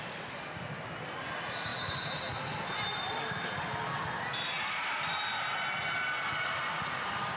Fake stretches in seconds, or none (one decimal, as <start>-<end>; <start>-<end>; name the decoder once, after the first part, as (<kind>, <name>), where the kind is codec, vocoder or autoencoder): none